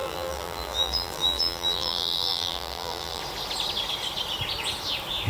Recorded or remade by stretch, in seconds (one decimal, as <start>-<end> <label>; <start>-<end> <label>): 0.0-3.2 remade; 3.2-5.3 recorded